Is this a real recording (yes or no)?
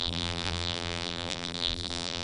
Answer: no